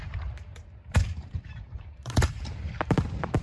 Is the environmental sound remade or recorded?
remade